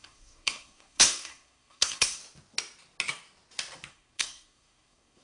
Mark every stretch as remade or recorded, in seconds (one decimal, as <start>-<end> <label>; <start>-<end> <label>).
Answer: 0.0-2.2 remade; 2.2-3.9 recorded; 3.9-5.2 remade